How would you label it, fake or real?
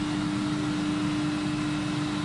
real